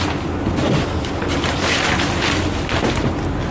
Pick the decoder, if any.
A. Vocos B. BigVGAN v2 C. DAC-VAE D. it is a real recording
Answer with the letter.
D